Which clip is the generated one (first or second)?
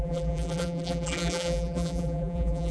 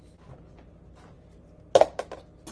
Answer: first